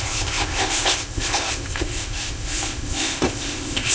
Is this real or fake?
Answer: fake